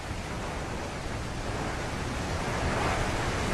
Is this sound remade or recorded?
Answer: recorded